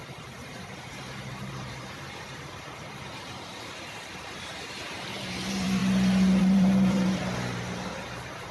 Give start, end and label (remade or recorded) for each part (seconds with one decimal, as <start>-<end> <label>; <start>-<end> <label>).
0.0-5.8 remade; 5.8-6.4 recorded; 6.4-8.5 remade